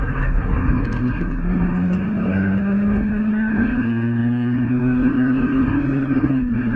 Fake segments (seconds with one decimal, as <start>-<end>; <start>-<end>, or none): 0.0-6.8